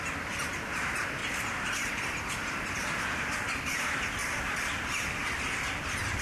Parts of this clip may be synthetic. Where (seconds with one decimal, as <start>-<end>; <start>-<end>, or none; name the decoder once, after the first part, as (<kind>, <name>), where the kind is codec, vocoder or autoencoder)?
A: 1.2-1.9 (vocoder, BigVGAN v2); 4.2-5.8